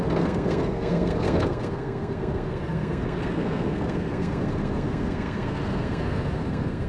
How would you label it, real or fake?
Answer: fake